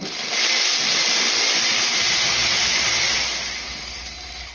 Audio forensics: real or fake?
real